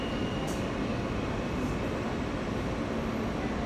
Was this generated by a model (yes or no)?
no